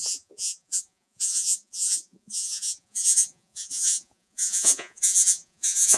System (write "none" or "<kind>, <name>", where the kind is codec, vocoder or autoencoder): vocoder, Vocos